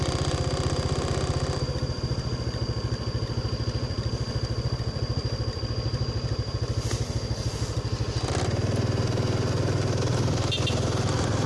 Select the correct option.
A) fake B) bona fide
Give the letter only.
B